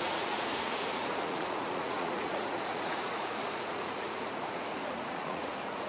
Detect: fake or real fake